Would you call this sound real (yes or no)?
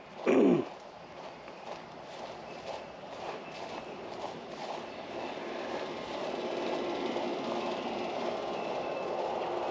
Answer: yes